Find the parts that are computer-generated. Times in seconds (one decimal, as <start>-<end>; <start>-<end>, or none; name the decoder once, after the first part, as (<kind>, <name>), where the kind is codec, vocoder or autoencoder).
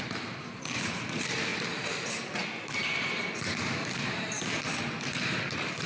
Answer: 0.0-1.5 (vocoder, BigVGAN v2); 5.0-5.9